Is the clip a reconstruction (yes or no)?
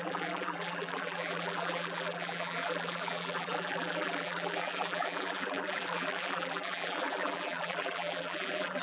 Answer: yes